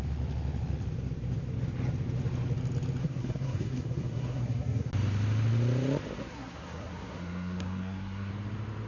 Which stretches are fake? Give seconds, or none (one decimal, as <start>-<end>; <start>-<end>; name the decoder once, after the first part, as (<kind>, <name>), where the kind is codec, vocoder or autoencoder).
3.0-4.9 (codec, SNAC); 6.2-8.3

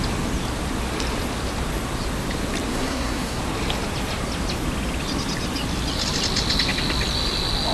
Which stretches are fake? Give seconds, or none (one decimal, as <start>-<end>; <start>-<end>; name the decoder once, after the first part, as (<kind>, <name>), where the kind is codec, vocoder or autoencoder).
2.7-3.4 (codec, SNAC)

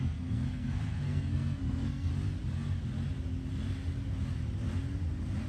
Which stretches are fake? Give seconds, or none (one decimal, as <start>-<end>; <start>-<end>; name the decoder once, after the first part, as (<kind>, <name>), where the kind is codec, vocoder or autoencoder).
0.0-2.1 (codec, SNAC)

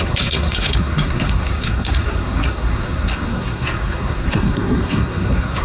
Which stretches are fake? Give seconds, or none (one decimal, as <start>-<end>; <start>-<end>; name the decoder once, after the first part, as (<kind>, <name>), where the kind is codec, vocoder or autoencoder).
0.0-5.6 (codec, SNAC)

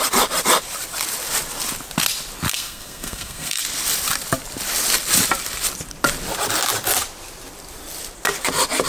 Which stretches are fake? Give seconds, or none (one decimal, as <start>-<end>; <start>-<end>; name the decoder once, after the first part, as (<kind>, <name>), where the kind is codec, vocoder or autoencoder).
2.5-3.6 (codec, SNAC)